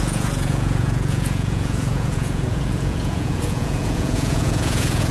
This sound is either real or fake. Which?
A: fake